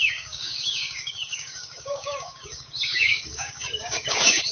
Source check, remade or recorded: remade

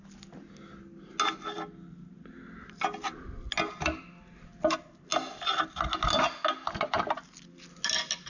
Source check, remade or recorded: recorded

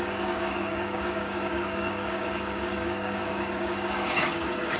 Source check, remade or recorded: remade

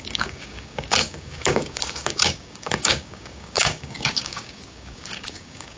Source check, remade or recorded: remade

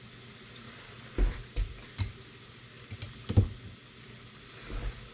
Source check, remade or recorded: recorded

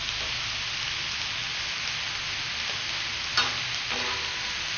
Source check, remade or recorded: recorded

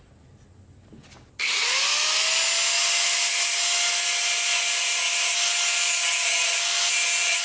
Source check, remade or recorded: recorded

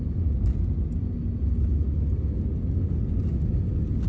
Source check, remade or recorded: recorded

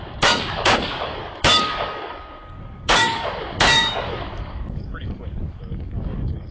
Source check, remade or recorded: remade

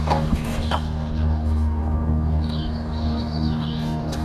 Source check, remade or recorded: remade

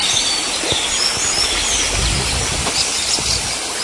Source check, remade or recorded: recorded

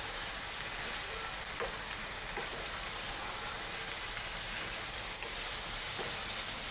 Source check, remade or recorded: recorded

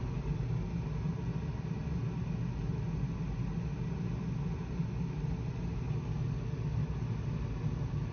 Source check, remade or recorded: recorded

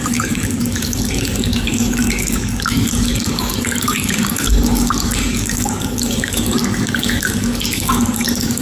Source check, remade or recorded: remade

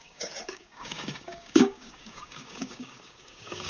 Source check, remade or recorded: remade